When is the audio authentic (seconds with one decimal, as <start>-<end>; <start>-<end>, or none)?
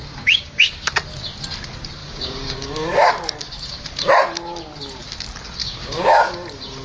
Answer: 0.9-2.0; 3.1-5.6; 6.3-6.8